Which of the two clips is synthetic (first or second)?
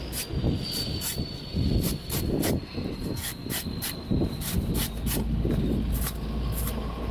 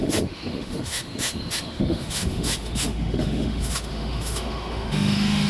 second